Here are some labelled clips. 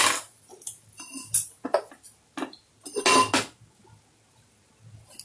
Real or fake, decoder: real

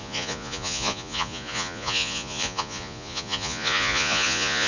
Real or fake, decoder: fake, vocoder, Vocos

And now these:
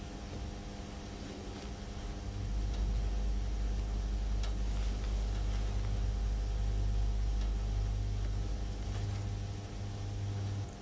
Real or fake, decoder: real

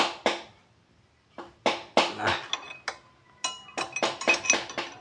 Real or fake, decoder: real